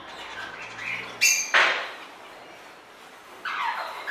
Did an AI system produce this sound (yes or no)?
no